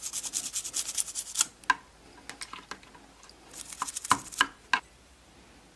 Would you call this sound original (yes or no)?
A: yes